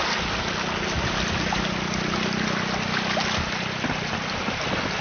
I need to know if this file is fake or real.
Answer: real